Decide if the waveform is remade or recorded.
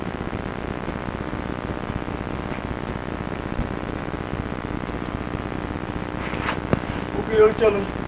remade